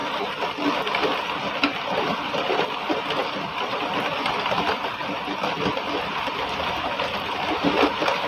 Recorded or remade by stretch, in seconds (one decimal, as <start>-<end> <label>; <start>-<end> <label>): 0.0-3.2 recorded; 3.2-4.0 remade; 4.0-5.0 recorded; 5.0-7.9 remade; 7.9-8.3 recorded